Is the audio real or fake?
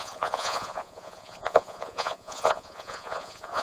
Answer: fake